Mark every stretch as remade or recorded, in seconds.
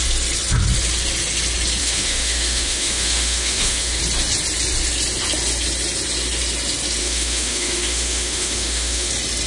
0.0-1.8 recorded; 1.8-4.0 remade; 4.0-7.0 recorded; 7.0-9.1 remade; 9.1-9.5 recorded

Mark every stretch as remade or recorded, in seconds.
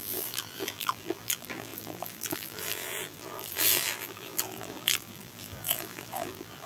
0.0-6.7 remade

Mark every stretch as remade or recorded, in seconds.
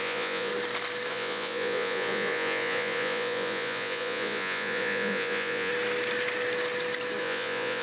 0.0-0.5 remade; 0.5-1.1 recorded; 1.1-5.7 remade; 5.7-7.2 recorded; 7.2-7.8 remade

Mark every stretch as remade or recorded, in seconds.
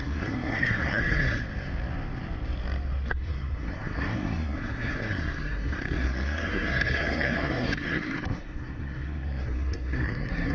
0.0-1.4 remade; 1.4-3.1 recorded; 3.1-10.5 remade